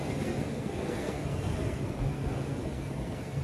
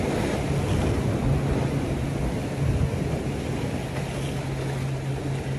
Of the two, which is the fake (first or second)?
first